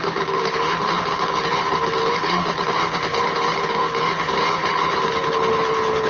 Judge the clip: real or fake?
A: fake